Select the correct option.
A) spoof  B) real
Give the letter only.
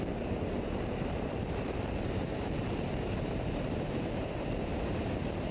A